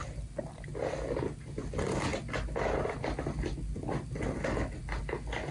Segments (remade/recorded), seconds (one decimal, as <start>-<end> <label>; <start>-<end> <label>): 0.0-5.5 recorded